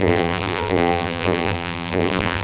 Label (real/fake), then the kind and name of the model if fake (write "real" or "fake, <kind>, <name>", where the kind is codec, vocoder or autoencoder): fake, vocoder, BigVGAN v2